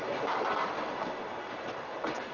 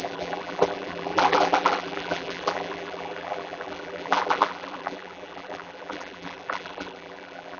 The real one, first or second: first